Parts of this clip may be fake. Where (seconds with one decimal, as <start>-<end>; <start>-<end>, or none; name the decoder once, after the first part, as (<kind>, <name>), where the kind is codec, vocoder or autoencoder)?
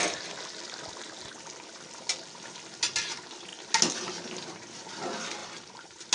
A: 5.4-6.1 (vocoder, BigVGAN v2)